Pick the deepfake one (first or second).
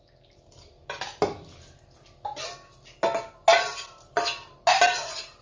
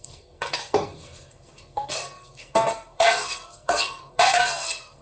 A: second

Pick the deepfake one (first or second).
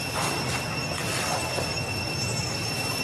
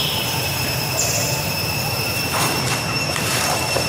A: second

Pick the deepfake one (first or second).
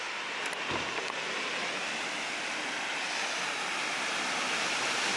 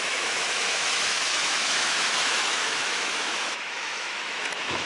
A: second